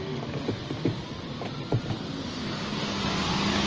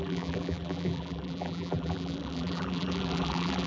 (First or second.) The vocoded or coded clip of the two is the second